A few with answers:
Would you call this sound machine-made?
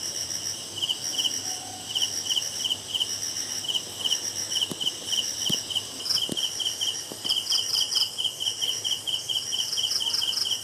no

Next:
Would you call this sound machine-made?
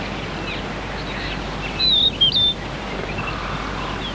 no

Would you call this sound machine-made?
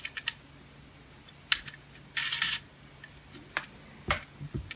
no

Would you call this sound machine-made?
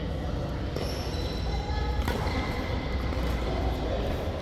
no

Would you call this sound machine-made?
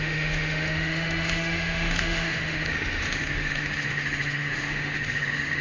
yes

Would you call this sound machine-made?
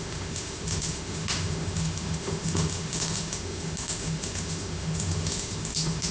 yes